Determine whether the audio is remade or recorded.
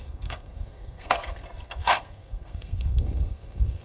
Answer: remade